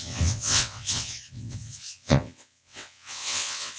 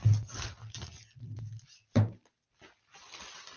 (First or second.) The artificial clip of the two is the first